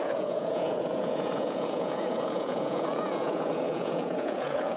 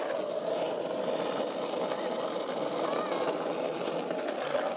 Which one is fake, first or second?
first